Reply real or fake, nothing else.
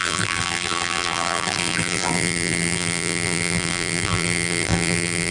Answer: fake